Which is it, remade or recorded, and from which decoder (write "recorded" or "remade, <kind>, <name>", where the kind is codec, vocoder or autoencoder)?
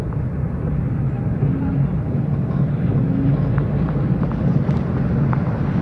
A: recorded